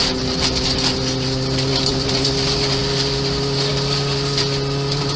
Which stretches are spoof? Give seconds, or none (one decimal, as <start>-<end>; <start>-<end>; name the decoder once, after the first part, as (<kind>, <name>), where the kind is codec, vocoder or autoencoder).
1.7-2.3 (vocoder, BigVGAN v2)